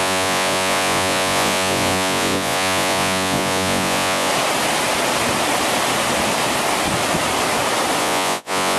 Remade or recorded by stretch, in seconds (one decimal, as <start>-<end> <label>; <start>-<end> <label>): 0.0-4.3 remade; 4.3-8.0 recorded; 8.0-8.8 remade